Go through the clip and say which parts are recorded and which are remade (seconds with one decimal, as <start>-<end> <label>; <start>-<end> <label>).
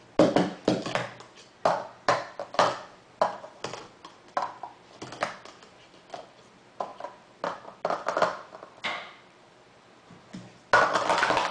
0.0-11.5 recorded